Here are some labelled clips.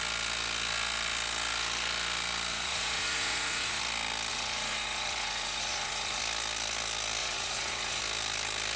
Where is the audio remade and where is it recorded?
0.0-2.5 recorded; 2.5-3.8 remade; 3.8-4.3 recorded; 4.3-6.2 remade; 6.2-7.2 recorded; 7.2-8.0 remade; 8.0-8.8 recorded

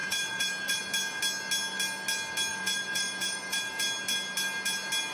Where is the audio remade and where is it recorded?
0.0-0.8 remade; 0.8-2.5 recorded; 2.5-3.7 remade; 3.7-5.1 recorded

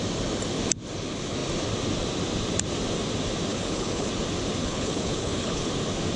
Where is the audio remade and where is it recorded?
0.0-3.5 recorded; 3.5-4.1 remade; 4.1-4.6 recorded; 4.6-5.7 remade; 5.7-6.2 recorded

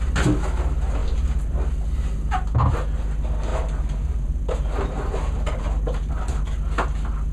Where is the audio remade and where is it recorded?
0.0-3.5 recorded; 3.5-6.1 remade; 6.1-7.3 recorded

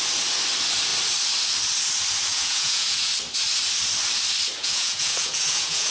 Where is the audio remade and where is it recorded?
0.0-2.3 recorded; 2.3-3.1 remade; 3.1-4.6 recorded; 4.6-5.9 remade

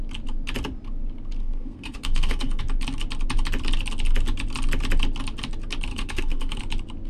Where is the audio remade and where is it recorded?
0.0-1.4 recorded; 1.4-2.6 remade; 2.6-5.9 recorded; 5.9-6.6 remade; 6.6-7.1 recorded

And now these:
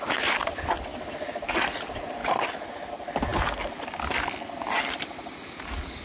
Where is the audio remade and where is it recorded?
0.0-6.0 recorded